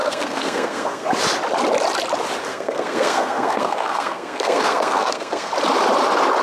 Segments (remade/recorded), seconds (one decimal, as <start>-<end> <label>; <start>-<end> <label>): 0.0-1.1 remade; 1.1-2.5 recorded; 2.5-5.5 remade; 5.5-6.4 recorded